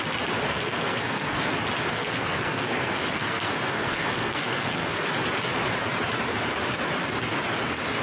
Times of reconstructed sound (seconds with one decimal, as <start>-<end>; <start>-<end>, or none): 0.5-1.4; 1.9-5.1